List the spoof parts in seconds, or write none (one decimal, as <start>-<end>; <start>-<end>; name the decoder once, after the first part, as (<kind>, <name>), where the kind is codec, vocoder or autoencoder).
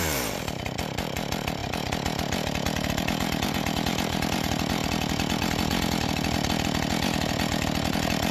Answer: 0.0-1.6 (vocoder, BigVGAN v2); 2.9-4.8; 7.9-8.3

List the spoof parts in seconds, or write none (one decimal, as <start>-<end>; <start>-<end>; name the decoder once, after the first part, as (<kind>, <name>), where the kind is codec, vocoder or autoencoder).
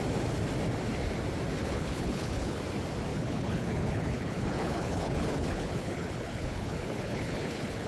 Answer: 1.6-2.6 (codec, HILCodec); 3.1-7.9